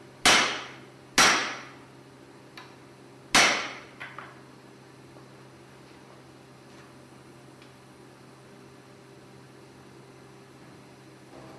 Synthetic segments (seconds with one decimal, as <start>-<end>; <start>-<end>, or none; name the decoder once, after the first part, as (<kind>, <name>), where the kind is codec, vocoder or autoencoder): none